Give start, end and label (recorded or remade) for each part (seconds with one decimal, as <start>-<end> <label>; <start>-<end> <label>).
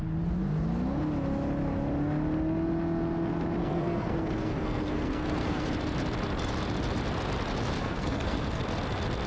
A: 0.0-3.6 recorded; 3.6-5.7 remade; 5.7-7.8 recorded; 7.8-8.6 remade; 8.6-9.3 recorded